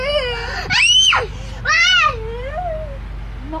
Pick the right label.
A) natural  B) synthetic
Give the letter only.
A